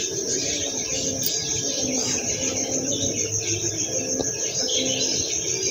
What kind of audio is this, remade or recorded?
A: remade